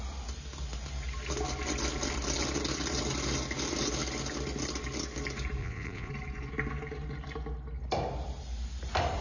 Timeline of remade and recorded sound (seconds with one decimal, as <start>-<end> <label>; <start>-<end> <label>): 0.0-5.6 recorded; 5.6-6.1 remade; 6.1-9.2 recorded